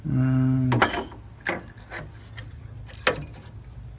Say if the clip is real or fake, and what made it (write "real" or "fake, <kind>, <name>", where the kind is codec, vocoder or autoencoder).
real